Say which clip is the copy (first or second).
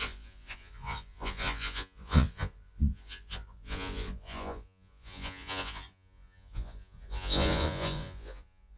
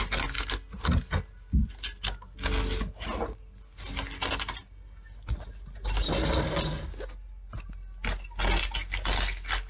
first